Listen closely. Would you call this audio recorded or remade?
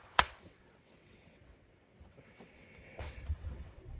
remade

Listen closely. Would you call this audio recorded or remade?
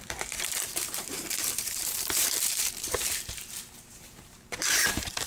remade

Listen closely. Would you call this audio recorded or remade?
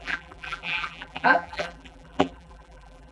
remade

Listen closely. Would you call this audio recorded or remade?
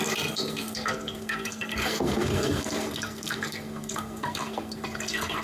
remade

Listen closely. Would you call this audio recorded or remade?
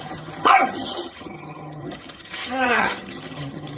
remade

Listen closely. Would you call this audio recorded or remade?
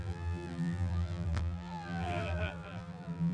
remade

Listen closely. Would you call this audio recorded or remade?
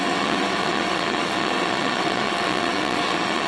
remade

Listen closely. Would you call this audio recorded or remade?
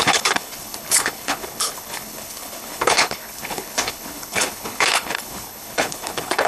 remade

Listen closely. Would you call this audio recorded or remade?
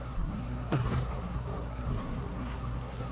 remade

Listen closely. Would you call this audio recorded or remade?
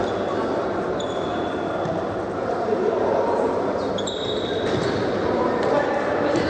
recorded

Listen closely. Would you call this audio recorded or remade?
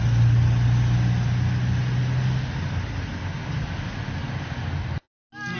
recorded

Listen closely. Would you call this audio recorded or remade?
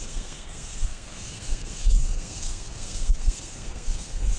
remade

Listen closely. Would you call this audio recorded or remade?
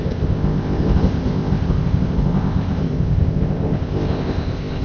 remade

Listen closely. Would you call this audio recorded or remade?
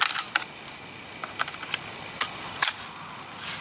recorded